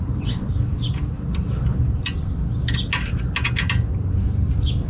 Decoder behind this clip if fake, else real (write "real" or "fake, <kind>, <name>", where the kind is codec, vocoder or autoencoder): real